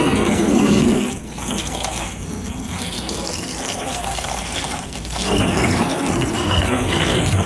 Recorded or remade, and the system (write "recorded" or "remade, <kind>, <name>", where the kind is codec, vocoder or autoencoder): remade, codec, SNAC